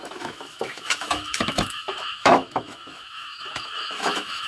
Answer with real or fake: fake